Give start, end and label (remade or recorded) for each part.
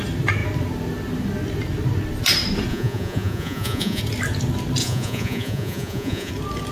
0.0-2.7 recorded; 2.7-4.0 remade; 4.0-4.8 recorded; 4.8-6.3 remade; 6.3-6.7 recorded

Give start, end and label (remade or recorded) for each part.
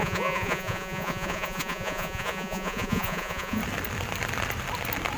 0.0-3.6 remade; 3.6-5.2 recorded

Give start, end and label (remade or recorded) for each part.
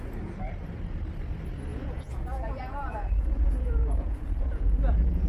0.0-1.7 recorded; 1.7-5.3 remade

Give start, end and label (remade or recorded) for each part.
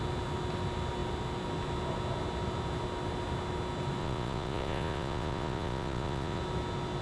0.0-4.0 recorded; 4.0-6.4 remade; 6.4-7.0 recorded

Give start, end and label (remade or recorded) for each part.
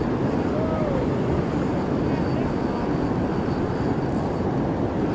0.0-5.1 recorded